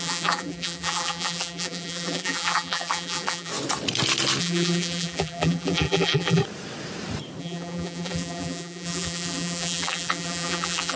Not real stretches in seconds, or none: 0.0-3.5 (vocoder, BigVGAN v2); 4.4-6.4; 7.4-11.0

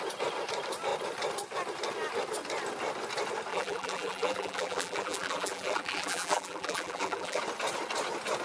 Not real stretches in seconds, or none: 3.5-7.4 (vocoder, BigVGAN v2)

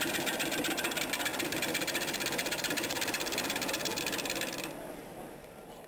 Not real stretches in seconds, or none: 1.3-4.0 (vocoder, BigVGAN v2); 5.0-5.9

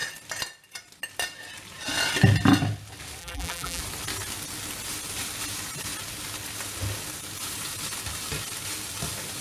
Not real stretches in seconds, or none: 3.2-3.8 (vocoder, BigVGAN v2)